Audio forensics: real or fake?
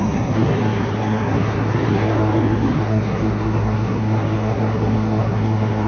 fake